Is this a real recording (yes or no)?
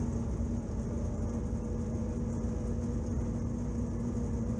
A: yes